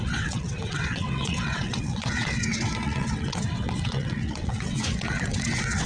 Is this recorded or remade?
remade